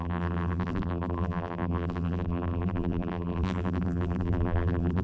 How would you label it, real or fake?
fake